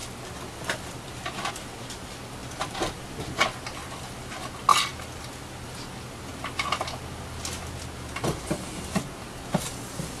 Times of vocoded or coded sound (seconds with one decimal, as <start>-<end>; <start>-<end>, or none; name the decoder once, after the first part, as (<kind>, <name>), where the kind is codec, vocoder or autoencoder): 0.0-1.5 (vocoder, BigVGAN v2); 2.4-4.1; 6.3-6.8